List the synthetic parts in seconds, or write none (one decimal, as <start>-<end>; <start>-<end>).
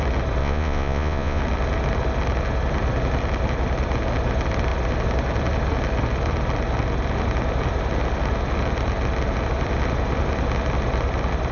0.4-1.4